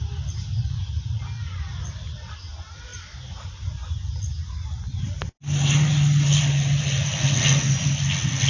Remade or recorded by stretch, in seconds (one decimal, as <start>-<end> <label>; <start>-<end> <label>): 0.0-8.5 recorded